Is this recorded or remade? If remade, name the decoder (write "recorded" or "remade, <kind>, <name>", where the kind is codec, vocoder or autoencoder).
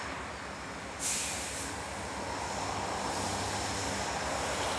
recorded